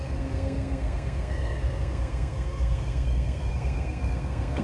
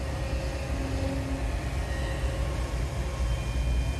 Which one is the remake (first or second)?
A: first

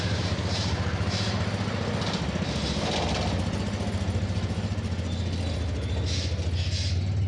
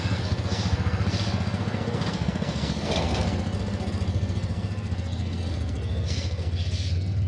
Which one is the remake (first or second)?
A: second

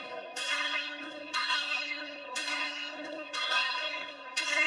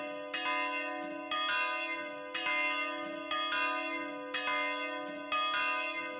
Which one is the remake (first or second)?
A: first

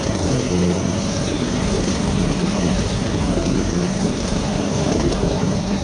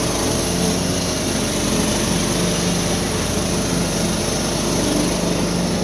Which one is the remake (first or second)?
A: first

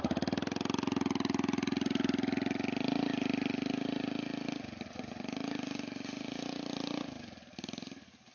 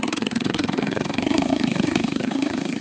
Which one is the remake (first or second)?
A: second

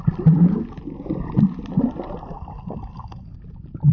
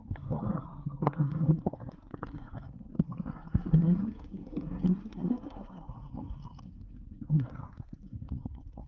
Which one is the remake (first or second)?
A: second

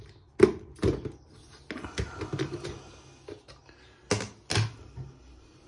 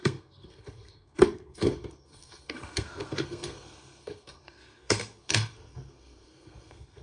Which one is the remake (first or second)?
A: second